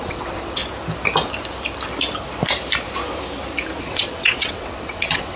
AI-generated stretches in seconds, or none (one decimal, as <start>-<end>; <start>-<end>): 0.0-0.6; 3.8-5.4